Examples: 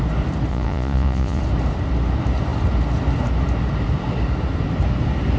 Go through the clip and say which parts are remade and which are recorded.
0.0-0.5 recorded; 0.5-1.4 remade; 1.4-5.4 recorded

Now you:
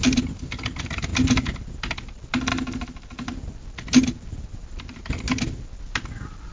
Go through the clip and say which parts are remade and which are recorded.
0.0-6.5 recorded

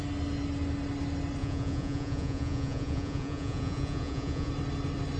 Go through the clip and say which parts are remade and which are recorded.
0.0-1.4 recorded; 1.4-4.5 remade; 4.5-5.2 recorded

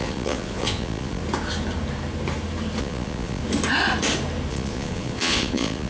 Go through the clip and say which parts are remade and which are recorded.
0.0-1.2 remade; 1.2-2.8 recorded; 2.8-3.4 remade; 3.4-4.5 recorded; 4.5-5.9 remade